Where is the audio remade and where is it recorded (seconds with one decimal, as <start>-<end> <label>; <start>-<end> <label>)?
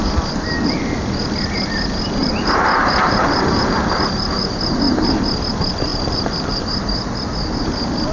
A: 0.0-2.2 recorded; 2.2-5.2 remade; 5.2-5.9 recorded; 5.9-6.6 remade; 6.6-8.1 recorded